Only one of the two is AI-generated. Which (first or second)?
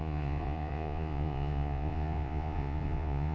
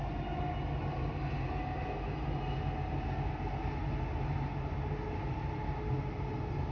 first